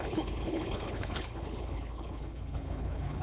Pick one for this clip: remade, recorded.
remade